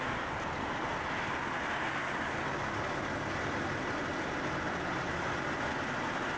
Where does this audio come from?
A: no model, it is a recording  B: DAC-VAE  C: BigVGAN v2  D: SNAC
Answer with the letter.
A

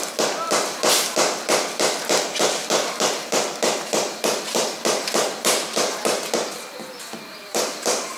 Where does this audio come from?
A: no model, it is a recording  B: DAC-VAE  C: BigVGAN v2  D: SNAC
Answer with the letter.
C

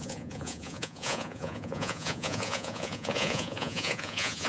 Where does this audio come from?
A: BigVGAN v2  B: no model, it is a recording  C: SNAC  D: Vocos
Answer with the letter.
D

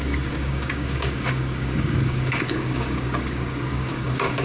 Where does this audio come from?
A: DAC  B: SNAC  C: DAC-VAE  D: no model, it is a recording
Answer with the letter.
A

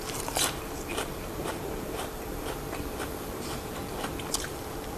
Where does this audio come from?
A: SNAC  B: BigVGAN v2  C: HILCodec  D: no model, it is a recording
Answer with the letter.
B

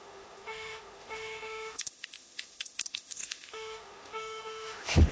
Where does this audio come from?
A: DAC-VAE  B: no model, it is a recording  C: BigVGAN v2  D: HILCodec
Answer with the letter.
A